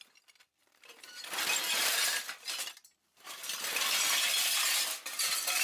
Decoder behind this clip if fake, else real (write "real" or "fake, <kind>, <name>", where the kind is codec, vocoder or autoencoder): fake, vocoder, BigVGAN v2